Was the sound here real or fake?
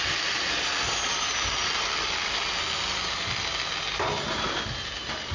real